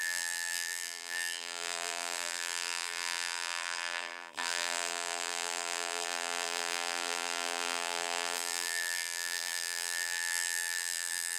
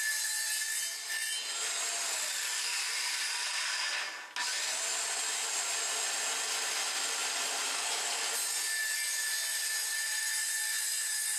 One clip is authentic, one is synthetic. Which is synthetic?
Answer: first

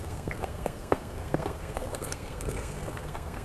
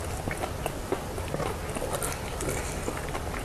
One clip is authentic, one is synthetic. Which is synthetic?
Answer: first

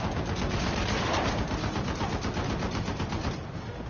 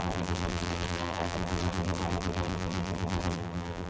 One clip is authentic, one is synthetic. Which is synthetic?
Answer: second